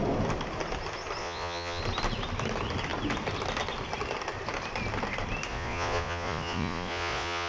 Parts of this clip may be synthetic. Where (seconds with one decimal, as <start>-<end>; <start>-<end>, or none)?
1.2-1.8; 5.5-7.5